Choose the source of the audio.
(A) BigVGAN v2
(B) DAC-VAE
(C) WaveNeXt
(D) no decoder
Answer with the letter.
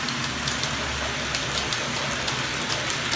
D